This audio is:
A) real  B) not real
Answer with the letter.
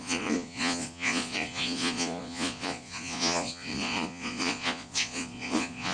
B